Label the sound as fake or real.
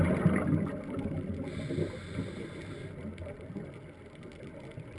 real